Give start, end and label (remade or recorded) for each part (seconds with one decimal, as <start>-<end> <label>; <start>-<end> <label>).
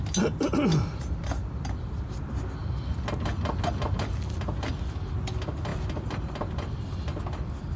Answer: 0.0-7.8 recorded